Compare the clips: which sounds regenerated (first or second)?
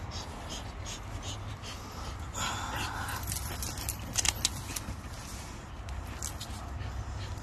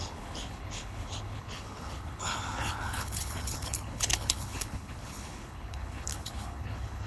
second